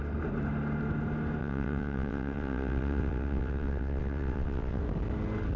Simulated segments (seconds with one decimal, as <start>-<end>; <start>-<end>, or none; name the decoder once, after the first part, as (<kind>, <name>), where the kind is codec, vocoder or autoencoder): 1.4-4.8 (vocoder, WaveNeXt)